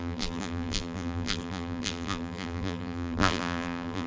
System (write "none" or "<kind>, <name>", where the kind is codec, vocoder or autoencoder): vocoder, BigVGAN v2